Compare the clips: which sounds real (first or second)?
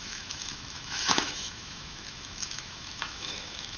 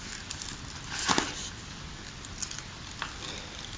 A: second